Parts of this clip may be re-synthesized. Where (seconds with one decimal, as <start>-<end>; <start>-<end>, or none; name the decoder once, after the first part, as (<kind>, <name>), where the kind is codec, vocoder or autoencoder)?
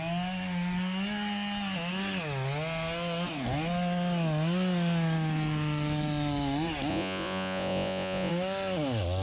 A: 6.9-8.3 (vocoder, Vocos)